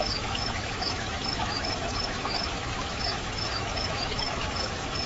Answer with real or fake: fake